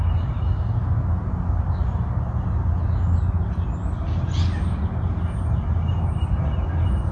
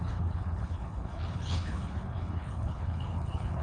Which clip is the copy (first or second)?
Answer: second